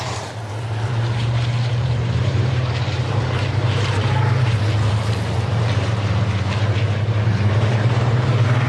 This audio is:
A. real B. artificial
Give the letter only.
B